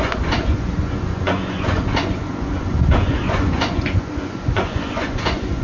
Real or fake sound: fake